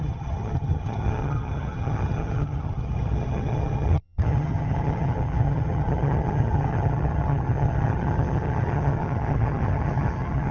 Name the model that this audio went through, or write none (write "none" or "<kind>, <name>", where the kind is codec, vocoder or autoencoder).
vocoder, HiFi-GAN